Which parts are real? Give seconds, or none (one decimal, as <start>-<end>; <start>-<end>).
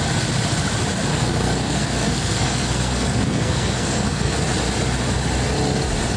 0.0-1.1; 4.4-6.2